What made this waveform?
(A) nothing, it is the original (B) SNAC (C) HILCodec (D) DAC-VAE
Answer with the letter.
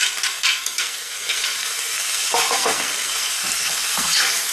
B